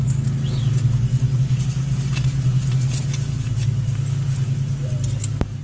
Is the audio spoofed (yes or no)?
no